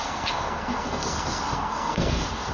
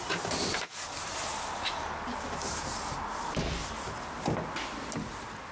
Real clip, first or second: second